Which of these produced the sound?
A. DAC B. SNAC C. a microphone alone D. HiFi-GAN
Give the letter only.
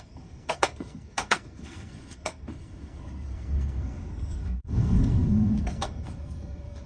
B